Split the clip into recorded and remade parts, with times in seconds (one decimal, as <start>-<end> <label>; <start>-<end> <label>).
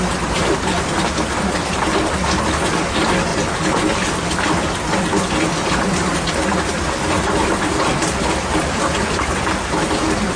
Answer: 0.0-10.4 recorded